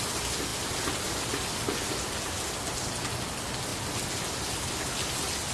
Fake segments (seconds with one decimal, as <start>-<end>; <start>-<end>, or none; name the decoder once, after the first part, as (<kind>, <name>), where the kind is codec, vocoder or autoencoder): none